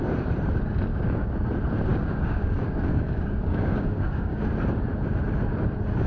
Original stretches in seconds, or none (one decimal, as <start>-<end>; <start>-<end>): 0.0-0.9; 1.5-1.9; 4.4-6.1